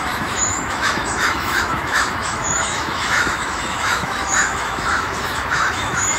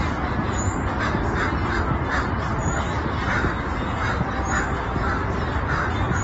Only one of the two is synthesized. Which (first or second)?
first